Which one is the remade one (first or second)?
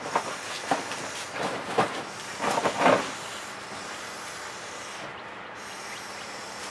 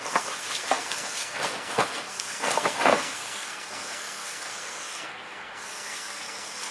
second